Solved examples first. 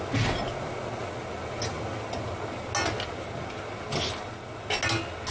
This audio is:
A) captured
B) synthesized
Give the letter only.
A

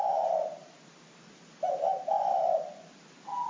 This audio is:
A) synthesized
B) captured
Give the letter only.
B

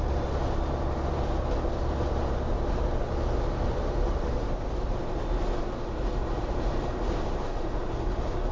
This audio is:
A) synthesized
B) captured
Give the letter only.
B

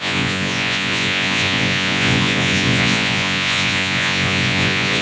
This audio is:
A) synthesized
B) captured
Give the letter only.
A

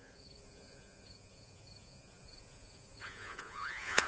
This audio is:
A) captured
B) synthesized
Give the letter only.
B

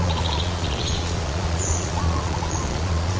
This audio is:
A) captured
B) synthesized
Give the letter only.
B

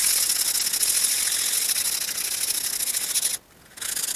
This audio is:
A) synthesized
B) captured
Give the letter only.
B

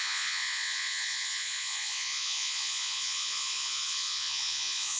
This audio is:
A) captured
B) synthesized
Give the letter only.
B